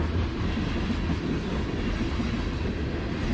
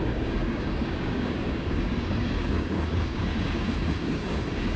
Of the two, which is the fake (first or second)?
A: second